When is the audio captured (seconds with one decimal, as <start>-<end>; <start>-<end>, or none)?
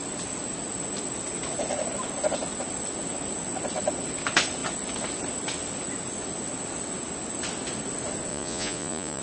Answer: 0.0-8.3